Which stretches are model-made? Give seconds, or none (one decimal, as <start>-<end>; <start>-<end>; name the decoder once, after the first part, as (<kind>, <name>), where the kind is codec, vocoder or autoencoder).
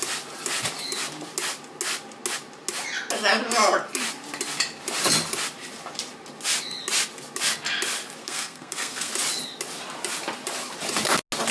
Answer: 8.2-9.1 (codec, SNAC)